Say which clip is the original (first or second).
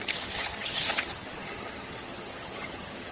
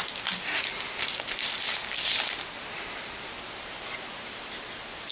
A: second